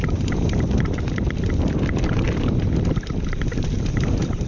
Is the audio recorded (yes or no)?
yes